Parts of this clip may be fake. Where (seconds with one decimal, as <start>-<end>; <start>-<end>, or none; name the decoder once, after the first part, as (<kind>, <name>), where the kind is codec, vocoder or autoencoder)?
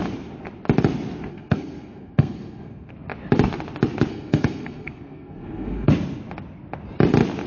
1.3-2.9 (codec, SNAC); 4.1-5.9